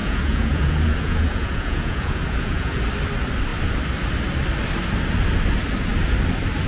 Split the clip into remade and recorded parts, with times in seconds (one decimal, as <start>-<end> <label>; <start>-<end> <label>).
0.0-2.8 remade; 2.8-6.7 recorded